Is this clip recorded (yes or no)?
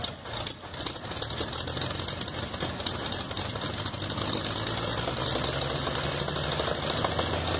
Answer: yes